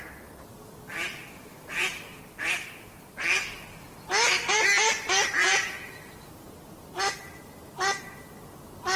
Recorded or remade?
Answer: recorded